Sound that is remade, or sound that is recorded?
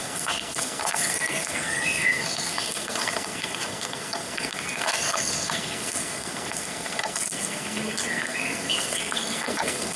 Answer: remade